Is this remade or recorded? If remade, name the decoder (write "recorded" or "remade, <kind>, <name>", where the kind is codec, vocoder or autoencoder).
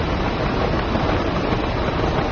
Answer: recorded